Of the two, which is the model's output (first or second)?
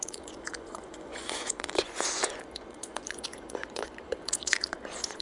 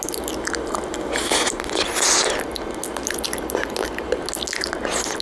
first